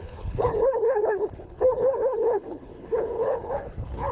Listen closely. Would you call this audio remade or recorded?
remade